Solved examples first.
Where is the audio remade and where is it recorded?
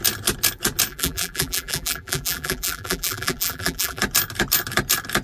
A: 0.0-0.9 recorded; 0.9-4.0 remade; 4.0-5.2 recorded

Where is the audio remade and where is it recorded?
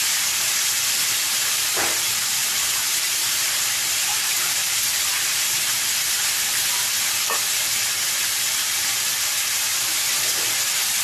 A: 0.0-2.4 recorded; 2.4-4.7 remade; 4.7-8.2 recorded; 8.2-10.3 remade; 10.3-11.0 recorded